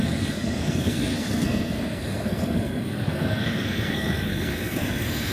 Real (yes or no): no